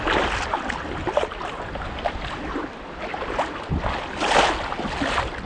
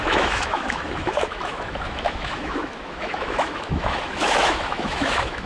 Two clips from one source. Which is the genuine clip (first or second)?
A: first